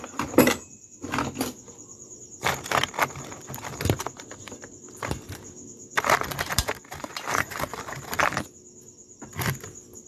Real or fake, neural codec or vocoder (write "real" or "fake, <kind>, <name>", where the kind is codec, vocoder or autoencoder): real